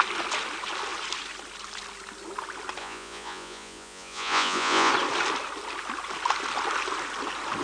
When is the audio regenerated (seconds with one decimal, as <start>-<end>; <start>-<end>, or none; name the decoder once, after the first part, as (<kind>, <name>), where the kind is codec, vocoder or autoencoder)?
2.8-4.9 (vocoder, Vocos)